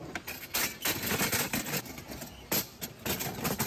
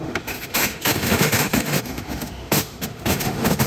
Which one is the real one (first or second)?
first